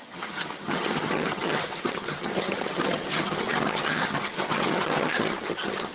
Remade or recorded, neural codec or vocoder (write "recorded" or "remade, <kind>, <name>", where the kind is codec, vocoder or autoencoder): remade, vocoder, HiFi-GAN